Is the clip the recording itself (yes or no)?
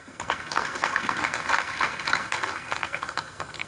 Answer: no